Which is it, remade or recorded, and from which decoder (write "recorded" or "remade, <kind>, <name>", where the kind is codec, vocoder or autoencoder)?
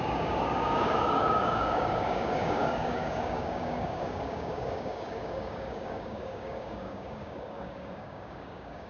remade, codec, DAC